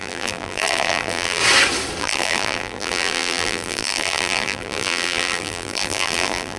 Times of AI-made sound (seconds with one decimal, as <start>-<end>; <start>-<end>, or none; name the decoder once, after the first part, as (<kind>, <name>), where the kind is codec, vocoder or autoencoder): 0.0-1.4 (vocoder, BigVGAN v2); 2.0-6.6